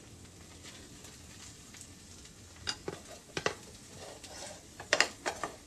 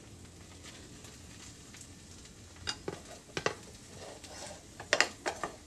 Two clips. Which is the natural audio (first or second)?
second